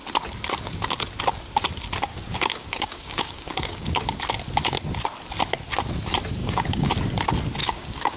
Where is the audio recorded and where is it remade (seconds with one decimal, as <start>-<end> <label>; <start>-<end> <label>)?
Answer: 0.0-2.1 recorded; 2.1-4.0 remade; 4.0-6.4 recorded; 6.4-6.9 remade; 6.9-7.6 recorded; 7.6-8.2 remade